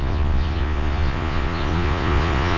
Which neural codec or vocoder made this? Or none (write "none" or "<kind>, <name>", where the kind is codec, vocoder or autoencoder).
vocoder, Vocos